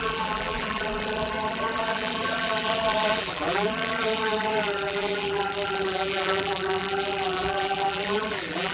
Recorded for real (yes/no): no